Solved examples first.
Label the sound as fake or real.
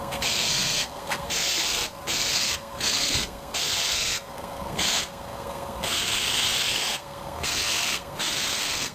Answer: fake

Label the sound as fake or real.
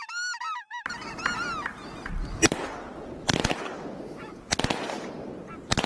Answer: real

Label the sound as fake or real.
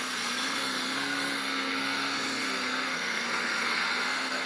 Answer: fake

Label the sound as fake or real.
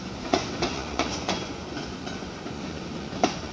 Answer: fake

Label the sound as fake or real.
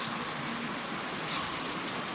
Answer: real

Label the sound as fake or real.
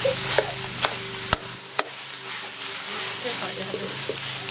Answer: real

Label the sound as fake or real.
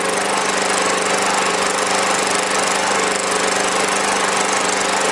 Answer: real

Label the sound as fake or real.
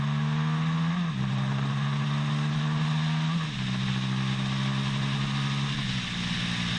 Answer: real